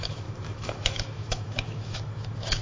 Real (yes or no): no